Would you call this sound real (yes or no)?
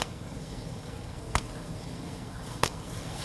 no